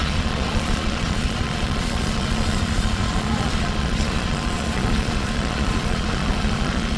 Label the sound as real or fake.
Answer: fake